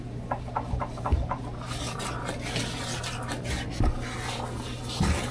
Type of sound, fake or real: real